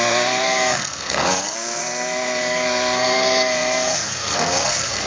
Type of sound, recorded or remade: remade